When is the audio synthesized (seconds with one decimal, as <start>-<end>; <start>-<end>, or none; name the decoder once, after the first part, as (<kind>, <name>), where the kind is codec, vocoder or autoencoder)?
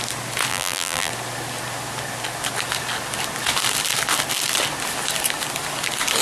0.5-1.1 (vocoder, BigVGAN v2)